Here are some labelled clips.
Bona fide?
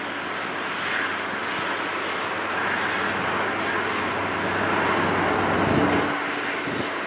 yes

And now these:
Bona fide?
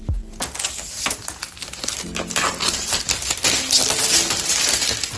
yes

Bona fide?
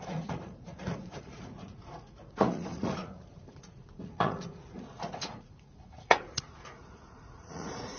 no